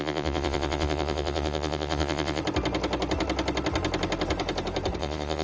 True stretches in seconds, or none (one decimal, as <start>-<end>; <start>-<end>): 2.4-5.0